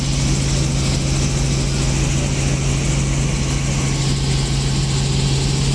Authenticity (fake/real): real